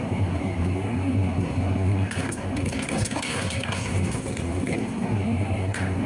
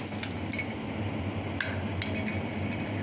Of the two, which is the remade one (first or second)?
first